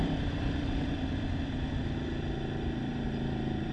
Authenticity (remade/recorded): remade